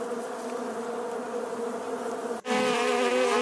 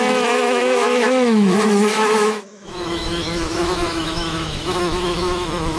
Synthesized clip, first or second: second